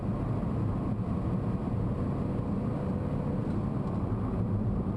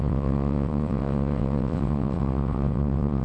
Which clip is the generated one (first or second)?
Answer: second